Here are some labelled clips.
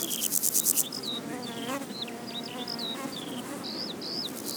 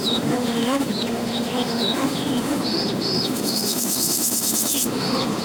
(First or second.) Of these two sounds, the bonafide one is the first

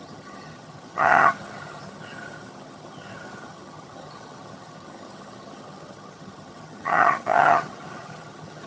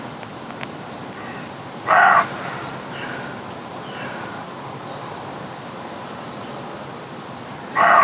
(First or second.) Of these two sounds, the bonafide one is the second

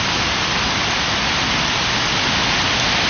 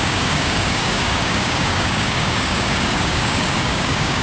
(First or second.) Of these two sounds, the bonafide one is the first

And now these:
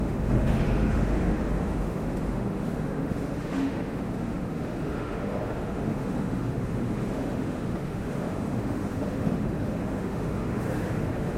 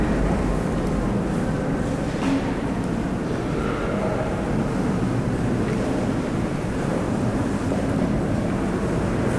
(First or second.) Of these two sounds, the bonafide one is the second